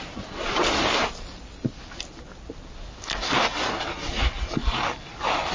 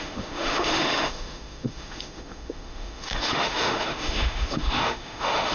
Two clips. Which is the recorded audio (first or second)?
first